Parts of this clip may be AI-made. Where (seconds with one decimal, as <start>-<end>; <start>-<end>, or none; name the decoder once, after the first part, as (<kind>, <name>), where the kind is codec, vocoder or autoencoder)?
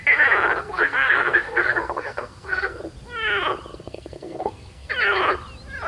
0.6-2.8 (codec, SNAC); 3.7-4.9